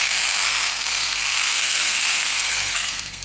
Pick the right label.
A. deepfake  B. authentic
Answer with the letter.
A